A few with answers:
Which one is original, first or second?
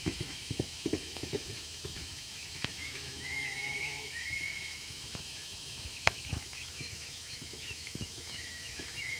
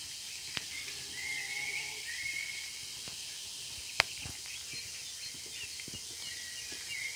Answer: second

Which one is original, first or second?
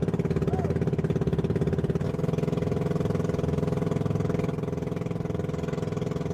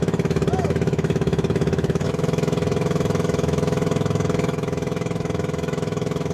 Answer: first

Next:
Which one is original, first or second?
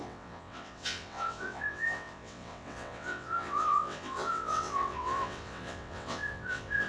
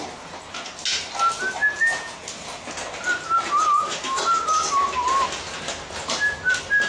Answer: second